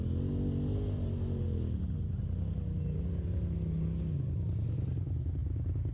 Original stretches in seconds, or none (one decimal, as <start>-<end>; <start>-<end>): 0.0-5.9

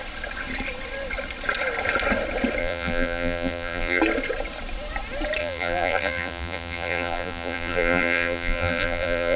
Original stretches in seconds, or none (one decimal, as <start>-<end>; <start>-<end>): 0.0-2.6; 4.0-5.4

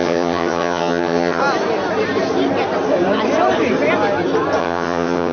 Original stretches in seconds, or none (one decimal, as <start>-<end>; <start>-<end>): 1.4-4.6

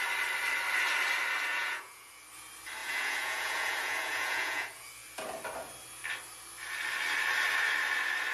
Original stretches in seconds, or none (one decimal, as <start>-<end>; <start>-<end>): 0.0-1.5; 2.1-2.8; 4.9-8.3

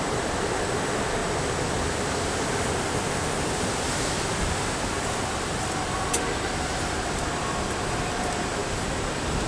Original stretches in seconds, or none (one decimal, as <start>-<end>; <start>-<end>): 1.2-2.7; 8.6-9.1

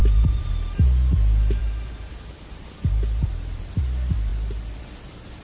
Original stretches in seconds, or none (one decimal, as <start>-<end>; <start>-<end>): 0.5-1.6; 3.7-5.4

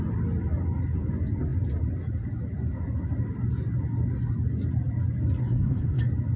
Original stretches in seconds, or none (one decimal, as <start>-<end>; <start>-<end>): 0.0-5.4; 6.0-6.4

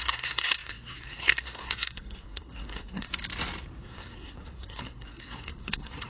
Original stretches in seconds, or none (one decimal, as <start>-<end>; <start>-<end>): 3.1-3.8